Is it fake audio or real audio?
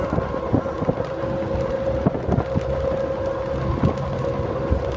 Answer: real